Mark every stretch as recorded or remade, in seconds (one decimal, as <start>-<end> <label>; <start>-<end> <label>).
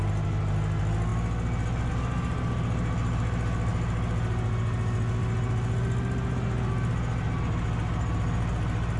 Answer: 0.0-9.0 recorded